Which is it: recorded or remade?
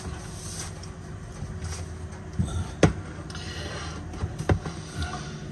recorded